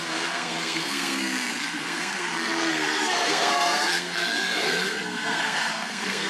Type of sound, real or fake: fake